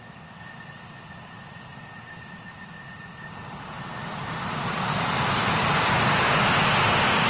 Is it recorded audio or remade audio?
remade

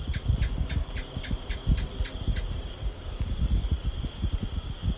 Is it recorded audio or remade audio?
recorded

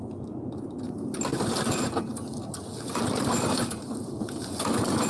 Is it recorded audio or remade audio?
recorded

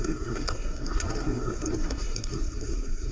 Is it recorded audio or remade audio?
remade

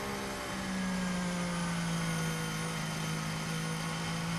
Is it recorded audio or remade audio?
recorded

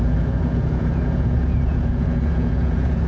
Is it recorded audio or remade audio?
remade